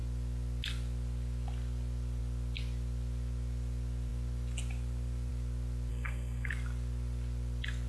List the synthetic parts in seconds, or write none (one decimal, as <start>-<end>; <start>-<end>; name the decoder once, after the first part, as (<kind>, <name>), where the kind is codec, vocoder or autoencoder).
5.9-6.5 (codec, SNAC)